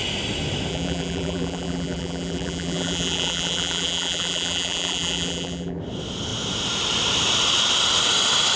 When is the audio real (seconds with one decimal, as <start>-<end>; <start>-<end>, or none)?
0.0-0.7; 5.8-8.6